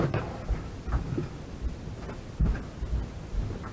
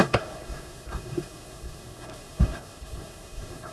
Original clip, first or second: first